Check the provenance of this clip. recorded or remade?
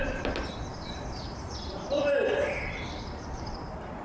remade